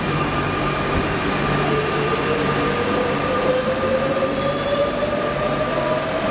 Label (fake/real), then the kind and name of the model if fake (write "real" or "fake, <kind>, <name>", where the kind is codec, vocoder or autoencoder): real